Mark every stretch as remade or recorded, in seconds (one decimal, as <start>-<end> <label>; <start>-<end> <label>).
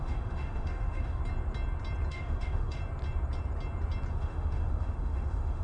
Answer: 0.0-1.2 remade; 1.2-2.1 recorded; 2.1-2.8 remade; 2.8-4.1 recorded; 4.1-5.6 remade